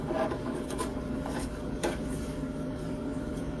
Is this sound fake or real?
fake